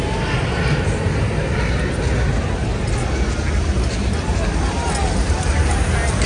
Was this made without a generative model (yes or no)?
yes